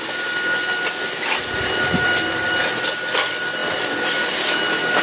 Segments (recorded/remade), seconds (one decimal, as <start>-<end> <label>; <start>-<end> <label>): 0.0-5.0 recorded